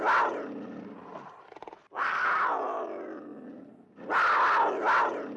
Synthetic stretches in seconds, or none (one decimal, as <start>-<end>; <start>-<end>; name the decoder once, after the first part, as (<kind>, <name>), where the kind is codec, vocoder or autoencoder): none